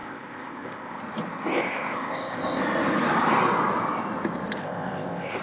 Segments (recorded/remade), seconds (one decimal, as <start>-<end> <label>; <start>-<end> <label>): 0.0-1.0 remade; 1.0-1.5 recorded; 1.5-2.6 remade; 2.6-4.6 recorded; 4.6-5.4 remade

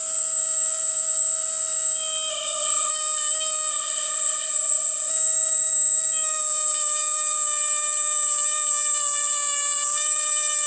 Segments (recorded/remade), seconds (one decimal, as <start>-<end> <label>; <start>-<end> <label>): 0.0-2.3 recorded; 2.3-2.9 remade; 2.9-3.7 recorded; 3.7-5.1 remade; 5.1-10.7 recorded

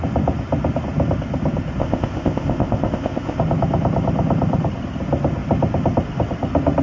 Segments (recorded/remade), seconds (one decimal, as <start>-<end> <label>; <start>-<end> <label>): 0.0-1.8 recorded; 1.8-3.4 remade; 3.4-6.8 recorded

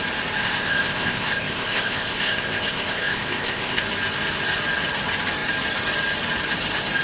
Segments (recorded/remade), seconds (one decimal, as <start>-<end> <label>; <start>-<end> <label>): 0.0-0.4 recorded; 0.4-3.8 remade; 3.8-7.0 recorded

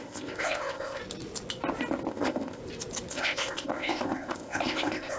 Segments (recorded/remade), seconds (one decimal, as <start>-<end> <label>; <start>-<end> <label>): 0.0-1.0 remade; 1.0-2.1 recorded; 2.1-2.6 remade; 2.6-3.1 recorded; 3.1-5.2 remade

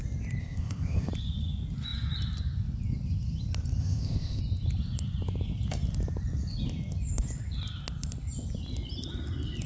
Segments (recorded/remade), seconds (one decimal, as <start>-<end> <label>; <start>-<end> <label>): 0.0-0.4 recorded; 0.4-1.1 remade; 1.1-3.8 recorded; 3.8-4.4 remade; 4.4-9.7 recorded